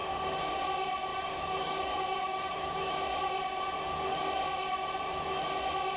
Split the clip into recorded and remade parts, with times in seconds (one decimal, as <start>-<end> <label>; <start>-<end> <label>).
0.0-0.6 remade; 0.6-1.1 recorded; 1.1-2.9 remade; 2.9-6.0 recorded